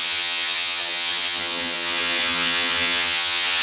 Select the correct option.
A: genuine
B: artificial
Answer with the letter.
B